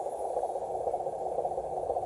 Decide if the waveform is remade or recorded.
recorded